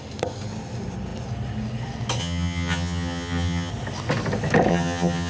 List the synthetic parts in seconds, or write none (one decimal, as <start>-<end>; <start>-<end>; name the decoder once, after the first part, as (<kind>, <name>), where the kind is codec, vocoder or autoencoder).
2.2-3.7 (vocoder, HiFi-GAN); 4.7-5.3